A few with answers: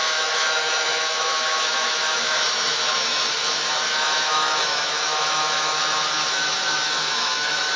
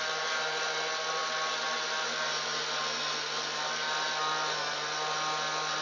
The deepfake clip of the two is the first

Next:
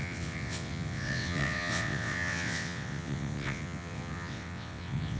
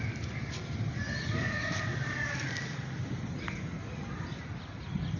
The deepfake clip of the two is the first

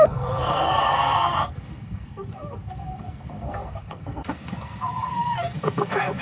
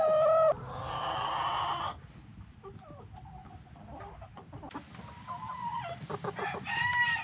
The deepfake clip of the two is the first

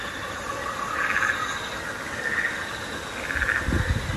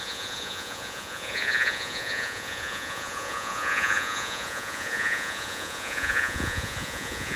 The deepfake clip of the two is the second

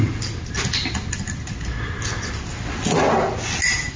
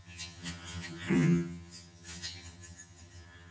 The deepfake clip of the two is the second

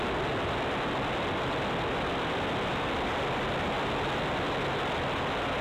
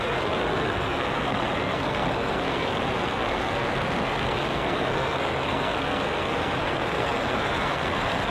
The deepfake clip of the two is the second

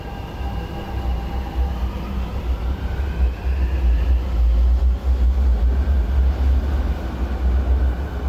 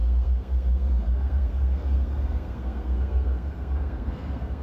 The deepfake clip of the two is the second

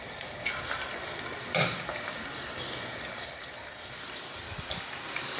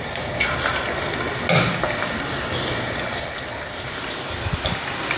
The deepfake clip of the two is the first